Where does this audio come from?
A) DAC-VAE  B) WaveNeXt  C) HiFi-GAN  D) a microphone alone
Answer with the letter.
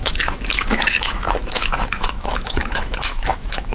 A